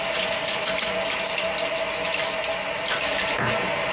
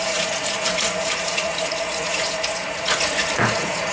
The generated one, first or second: second